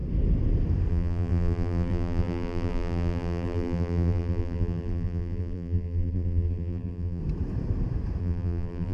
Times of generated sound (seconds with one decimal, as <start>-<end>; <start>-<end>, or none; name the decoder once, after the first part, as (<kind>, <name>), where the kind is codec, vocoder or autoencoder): 0.9-7.2 (vocoder, BigVGAN v2); 8.2-8.9